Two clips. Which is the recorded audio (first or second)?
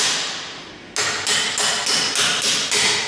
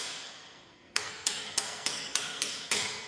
first